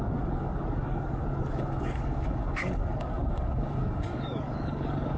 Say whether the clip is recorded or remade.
remade